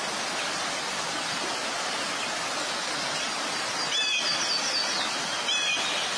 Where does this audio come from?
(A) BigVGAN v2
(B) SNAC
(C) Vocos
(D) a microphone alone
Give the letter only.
D